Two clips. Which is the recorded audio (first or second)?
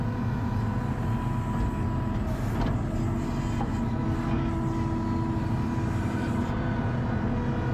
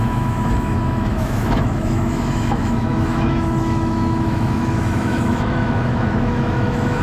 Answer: first